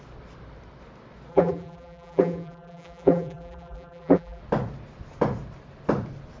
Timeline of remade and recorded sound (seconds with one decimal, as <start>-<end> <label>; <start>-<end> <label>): 0.0-1.3 recorded; 1.3-4.4 remade; 4.4-6.4 recorded